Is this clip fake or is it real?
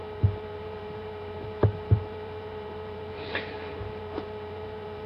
fake